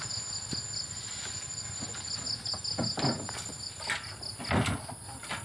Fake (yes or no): no